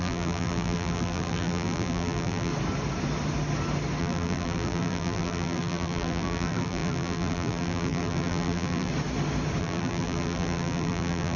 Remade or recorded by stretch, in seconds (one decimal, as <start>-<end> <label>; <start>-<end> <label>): 0.0-2.5 remade; 2.5-4.0 recorded; 4.0-8.9 remade; 8.9-9.6 recorded; 9.6-11.4 remade